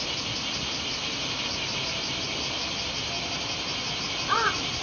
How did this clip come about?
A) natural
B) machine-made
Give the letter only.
A